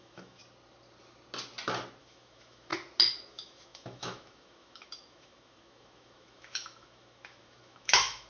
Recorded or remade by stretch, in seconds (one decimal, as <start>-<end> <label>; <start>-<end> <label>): 0.0-0.4 remade; 0.4-2.0 recorded; 2.0-2.7 remade; 2.7-3.3 recorded; 3.3-8.3 remade